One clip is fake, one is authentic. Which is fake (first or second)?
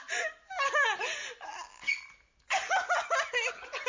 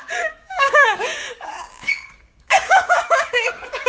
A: second